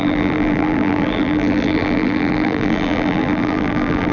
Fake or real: fake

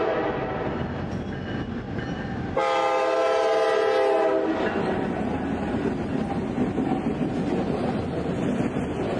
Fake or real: real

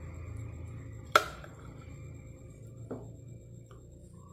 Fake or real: real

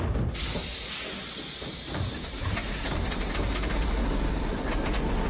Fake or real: real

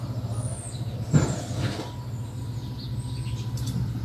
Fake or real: real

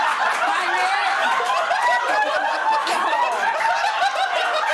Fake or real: real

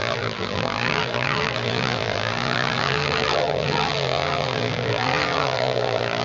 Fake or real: fake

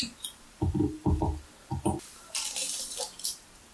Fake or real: fake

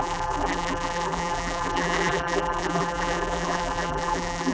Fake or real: fake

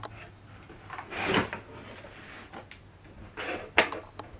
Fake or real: real